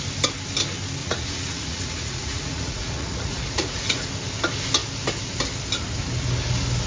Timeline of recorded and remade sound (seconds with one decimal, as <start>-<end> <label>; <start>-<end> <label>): 0.0-1.0 recorded; 1.0-4.1 remade; 4.1-6.9 recorded